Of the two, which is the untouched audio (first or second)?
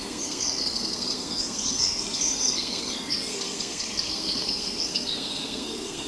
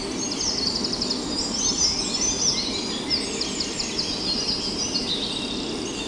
second